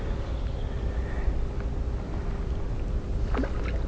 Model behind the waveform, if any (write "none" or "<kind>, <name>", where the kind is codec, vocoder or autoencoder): none